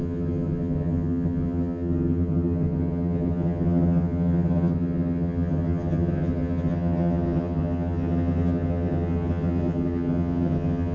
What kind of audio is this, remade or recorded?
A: remade